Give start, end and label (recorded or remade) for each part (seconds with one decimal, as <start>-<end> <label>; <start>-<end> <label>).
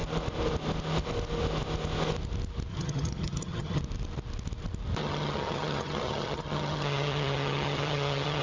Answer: 0.0-2.7 recorded; 2.7-3.8 remade; 3.8-5.0 recorded; 5.0-8.4 remade